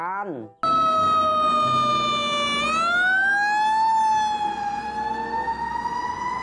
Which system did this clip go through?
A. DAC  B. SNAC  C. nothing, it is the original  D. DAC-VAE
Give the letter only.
C